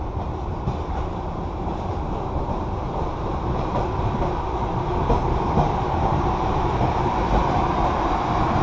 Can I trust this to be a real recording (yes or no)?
no